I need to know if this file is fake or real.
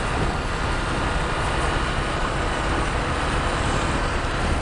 real